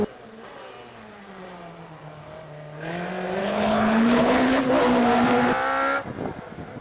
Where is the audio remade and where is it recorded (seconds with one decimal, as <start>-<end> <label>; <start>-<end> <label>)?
0.0-3.4 recorded; 3.4-4.6 remade; 4.6-6.8 recorded